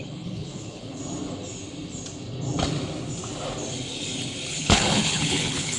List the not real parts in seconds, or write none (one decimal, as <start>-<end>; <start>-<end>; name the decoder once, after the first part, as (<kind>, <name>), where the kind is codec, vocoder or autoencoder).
0.0-1.0 (codec, HILCodec); 4.5-5.8